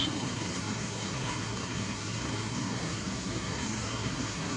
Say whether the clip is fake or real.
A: fake